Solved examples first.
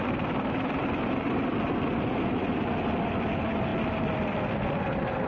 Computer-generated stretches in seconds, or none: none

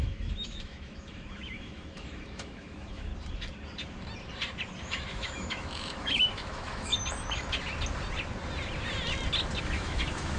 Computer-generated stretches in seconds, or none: 0.0-3.1 (autoencoder, DAC-VAE); 4.8-6.9; 9.6-10.4